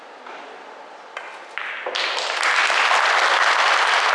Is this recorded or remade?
recorded